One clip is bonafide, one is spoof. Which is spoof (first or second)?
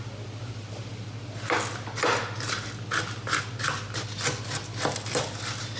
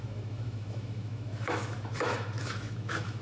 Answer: second